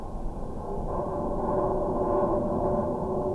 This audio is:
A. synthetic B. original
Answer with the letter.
A